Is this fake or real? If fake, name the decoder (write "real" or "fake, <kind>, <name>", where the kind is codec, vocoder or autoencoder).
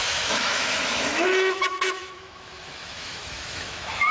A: fake, autoencoder, DAC-VAE